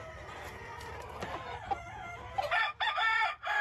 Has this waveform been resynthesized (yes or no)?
no